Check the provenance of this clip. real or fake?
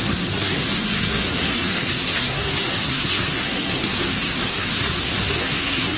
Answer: fake